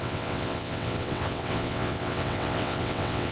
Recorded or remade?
remade